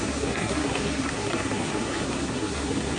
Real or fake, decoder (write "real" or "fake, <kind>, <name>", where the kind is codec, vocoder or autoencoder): fake, codec, SNAC